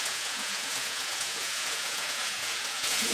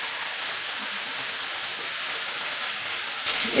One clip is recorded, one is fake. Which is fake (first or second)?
first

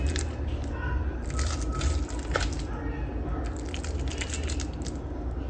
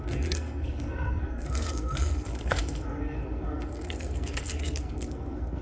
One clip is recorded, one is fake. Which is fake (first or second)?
second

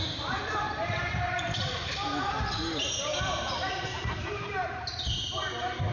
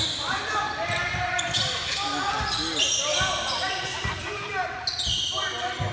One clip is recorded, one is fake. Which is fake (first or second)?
first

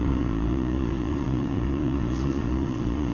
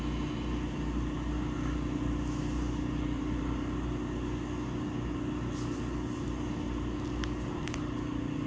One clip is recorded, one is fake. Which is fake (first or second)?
first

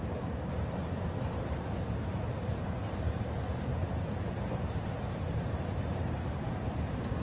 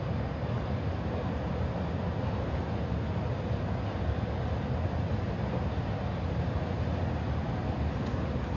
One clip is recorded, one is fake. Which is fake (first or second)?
first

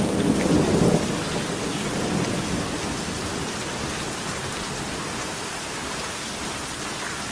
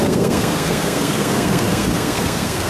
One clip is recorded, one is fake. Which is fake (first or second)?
second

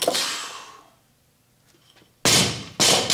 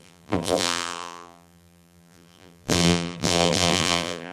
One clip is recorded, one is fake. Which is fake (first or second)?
second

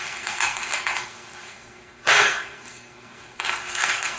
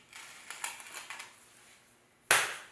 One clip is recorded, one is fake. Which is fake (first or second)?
first